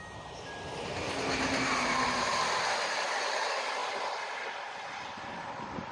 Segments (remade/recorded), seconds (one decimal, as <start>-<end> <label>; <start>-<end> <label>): 0.0-3.8 recorded; 3.8-5.3 remade; 5.3-5.9 recorded